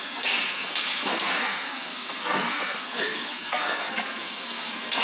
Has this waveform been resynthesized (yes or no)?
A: yes